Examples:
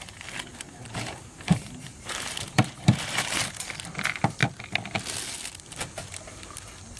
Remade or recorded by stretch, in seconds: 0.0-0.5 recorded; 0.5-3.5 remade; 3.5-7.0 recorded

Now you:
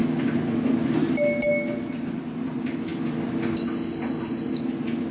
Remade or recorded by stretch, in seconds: 0.0-5.1 recorded

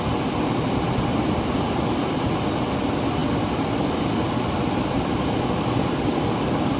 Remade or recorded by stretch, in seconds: 0.0-6.8 recorded

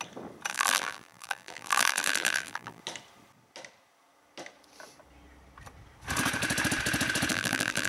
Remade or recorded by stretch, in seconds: 0.0-0.5 recorded; 0.5-2.8 remade; 2.8-7.3 recorded; 7.3-7.9 remade

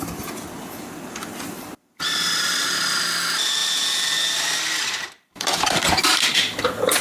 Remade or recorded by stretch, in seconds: 0.0-3.6 recorded; 3.6-6.0 remade; 6.0-7.0 recorded

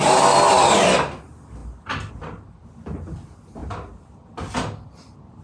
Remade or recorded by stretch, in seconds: 0.0-5.4 recorded

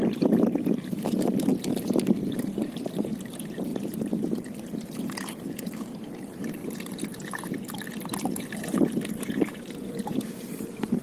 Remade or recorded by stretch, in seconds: 0.0-1.5 remade; 1.5-2.3 recorded; 2.3-3.7 remade; 3.7-4.4 recorded; 4.4-6.6 remade; 6.6-8.6 recorded; 8.6-11.0 remade